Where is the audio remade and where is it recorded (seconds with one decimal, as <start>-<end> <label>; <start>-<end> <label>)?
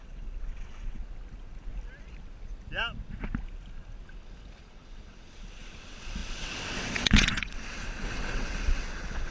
0.0-1.0 remade; 1.0-4.7 recorded; 4.7-9.3 remade